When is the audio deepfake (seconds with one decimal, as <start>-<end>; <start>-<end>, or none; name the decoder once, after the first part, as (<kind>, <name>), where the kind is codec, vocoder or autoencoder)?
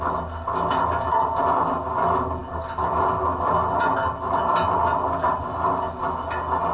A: none